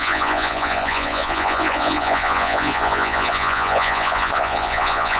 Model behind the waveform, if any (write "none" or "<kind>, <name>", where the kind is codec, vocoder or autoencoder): vocoder, Vocos